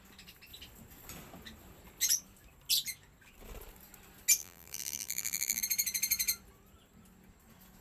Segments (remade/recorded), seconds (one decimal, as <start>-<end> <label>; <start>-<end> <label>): 0.0-4.4 recorded; 4.4-5.6 remade; 5.6-7.8 recorded